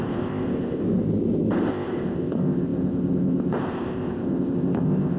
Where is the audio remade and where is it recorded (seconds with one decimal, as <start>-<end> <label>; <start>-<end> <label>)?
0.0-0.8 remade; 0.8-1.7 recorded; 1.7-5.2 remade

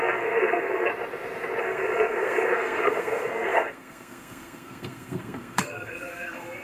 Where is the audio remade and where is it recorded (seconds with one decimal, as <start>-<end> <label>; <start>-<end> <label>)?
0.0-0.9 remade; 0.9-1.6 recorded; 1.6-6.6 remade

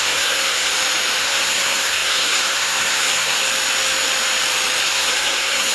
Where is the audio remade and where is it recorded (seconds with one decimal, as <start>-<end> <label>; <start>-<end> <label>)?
0.0-0.7 remade; 0.7-1.2 recorded; 1.2-3.4 remade; 3.4-4.8 recorded; 4.8-5.7 remade

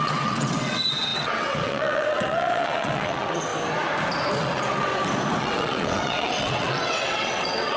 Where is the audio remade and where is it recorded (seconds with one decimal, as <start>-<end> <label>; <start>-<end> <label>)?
0.0-3.5 remade; 3.5-4.4 recorded; 4.4-4.9 remade; 4.9-5.4 recorded; 5.4-7.8 remade

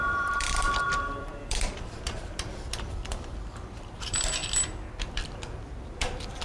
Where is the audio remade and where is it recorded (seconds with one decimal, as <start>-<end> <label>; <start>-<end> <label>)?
0.0-4.4 remade; 4.4-5.0 recorded; 5.0-6.4 remade

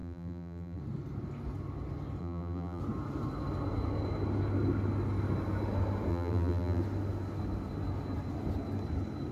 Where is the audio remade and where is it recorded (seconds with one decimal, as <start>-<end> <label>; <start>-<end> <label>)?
0.0-0.8 remade; 0.8-2.2 recorded; 2.2-2.8 remade; 2.8-6.1 recorded; 6.1-6.8 remade; 6.8-9.3 recorded

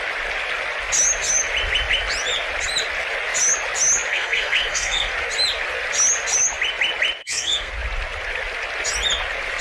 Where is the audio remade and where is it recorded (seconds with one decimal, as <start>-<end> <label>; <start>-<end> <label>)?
0.0-4.1 recorded; 4.1-5.1 remade; 5.1-7.2 recorded; 7.2-7.7 remade; 7.7-9.6 recorded

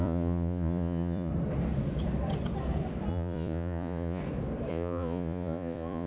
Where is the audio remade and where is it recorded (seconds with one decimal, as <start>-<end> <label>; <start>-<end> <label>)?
0.0-1.3 remade; 1.3-3.1 recorded; 3.1-4.2 remade; 4.2-4.7 recorded; 4.7-6.1 remade